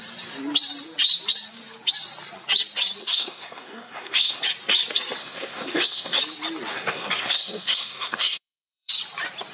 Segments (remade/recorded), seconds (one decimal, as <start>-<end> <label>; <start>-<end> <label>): 0.0-3.0 recorded; 3.0-4.4 remade; 4.4-5.2 recorded; 5.2-6.2 remade; 6.2-6.7 recorded; 6.7-8.9 remade; 8.9-9.5 recorded